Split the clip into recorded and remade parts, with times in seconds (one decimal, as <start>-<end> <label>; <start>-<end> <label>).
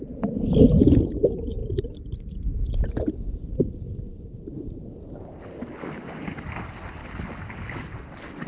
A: 0.0-8.5 recorded